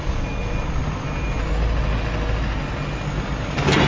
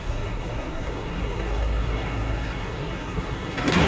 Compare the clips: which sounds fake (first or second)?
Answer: second